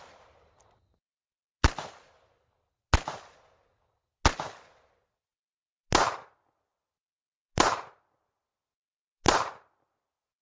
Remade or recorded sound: recorded